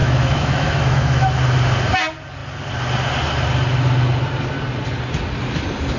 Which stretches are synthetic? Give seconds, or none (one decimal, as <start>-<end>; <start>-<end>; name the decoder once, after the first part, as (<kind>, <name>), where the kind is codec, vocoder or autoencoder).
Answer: 0.0-1.4 (autoencoder, DAC-VAE)